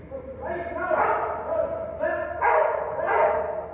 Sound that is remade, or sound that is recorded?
recorded